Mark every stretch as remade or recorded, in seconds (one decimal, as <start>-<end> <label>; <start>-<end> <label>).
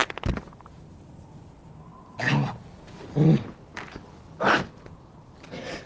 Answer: 0.0-5.9 recorded